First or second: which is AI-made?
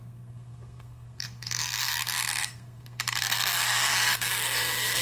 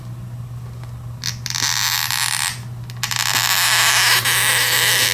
first